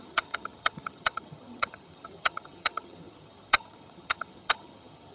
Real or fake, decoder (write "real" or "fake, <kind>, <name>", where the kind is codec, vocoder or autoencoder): fake, vocoder, HiFi-GAN